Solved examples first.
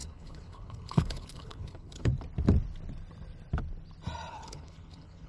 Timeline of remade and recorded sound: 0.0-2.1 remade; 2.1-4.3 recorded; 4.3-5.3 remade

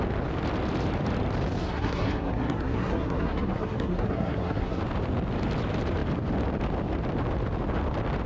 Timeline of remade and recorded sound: 0.0-1.6 recorded; 1.6-4.8 remade; 4.8-8.3 recorded

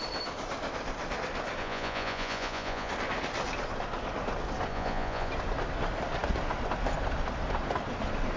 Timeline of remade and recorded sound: 0.0-1.6 recorded; 1.6-2.9 remade; 2.9-4.7 recorded; 4.7-5.3 remade; 5.3-8.4 recorded